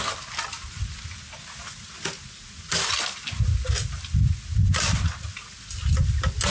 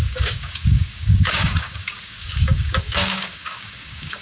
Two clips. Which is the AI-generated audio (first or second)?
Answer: second